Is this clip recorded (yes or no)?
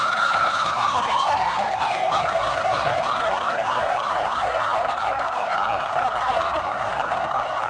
no